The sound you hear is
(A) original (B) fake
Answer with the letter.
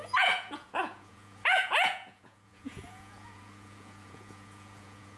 B